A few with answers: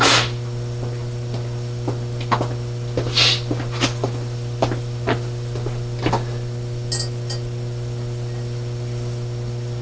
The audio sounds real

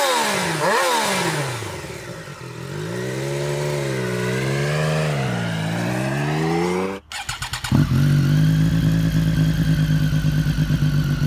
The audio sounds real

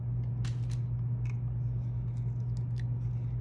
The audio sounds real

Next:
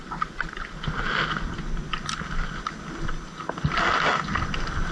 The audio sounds real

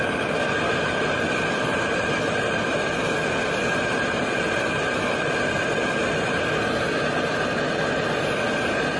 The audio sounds real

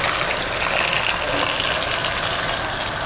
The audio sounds real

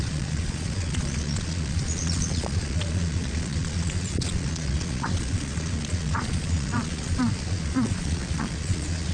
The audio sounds fake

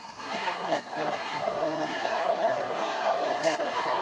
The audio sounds fake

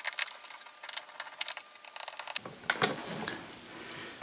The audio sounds real